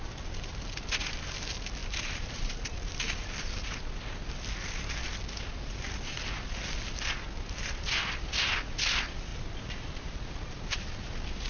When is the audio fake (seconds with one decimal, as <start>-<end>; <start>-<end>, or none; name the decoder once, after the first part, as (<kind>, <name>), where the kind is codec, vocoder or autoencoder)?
1.8-3.7 (vocoder, BigVGAN v2); 9.3-11.5